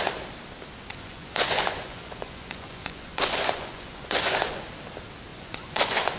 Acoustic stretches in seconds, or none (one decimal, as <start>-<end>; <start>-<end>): 0.0-0.9; 4.6-5.3

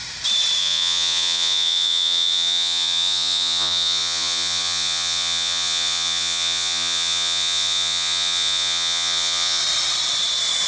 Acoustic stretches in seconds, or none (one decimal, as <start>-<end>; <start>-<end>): 0.0-0.6; 9.6-10.7

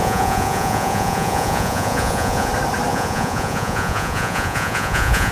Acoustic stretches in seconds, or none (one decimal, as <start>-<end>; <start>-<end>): 2.5-2.9

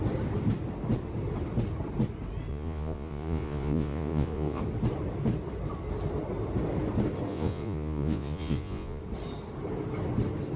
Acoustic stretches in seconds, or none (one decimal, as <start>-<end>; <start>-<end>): 0.0-2.5; 4.6-7.3; 9.0-10.6